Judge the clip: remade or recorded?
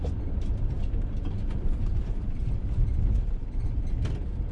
remade